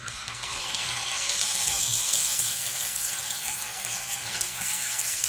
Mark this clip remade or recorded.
remade